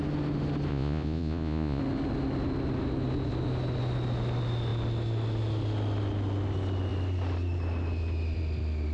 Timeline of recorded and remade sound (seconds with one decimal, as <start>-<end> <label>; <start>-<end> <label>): 0.0-0.7 recorded; 0.7-1.8 remade; 1.8-8.9 recorded